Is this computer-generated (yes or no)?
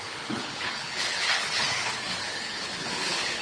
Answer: yes